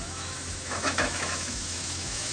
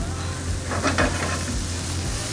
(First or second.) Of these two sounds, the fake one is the first